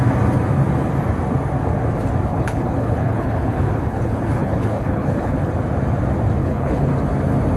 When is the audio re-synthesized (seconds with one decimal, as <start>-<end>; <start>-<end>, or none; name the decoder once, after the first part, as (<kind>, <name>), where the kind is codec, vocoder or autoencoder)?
2.3-5.5 (codec, HILCodec); 6.4-6.9